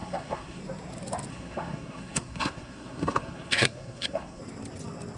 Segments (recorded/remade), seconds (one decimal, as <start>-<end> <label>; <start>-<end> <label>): 0.0-0.6 remade; 0.6-1.3 recorded; 1.3-4.4 remade; 4.4-5.2 recorded